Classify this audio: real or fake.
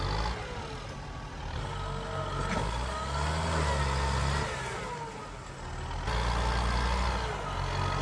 real